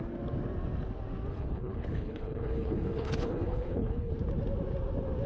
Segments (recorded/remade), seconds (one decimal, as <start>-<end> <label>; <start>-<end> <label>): 0.0-1.3 recorded; 1.3-4.1 remade; 4.1-5.3 recorded